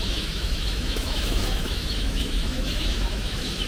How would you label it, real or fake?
fake